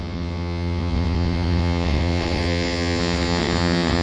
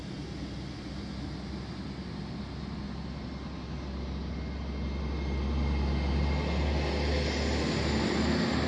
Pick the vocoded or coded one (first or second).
first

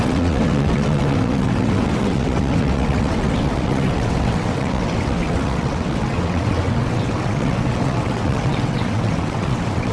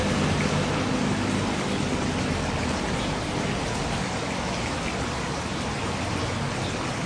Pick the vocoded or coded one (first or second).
first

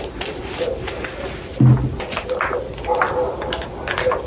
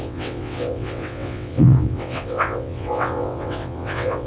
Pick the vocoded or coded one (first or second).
second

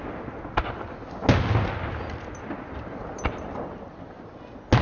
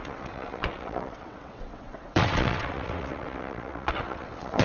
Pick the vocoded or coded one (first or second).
second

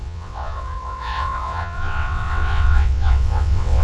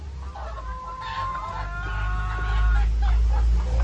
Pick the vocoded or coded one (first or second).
first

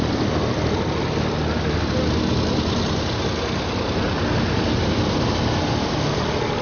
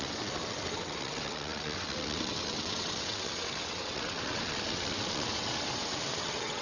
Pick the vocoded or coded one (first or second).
second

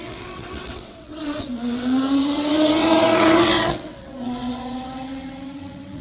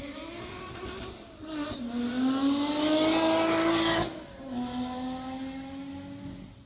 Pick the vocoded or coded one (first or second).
first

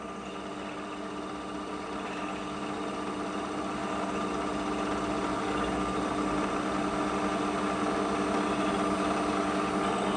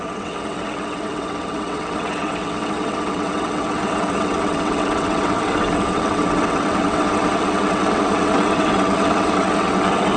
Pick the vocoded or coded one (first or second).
second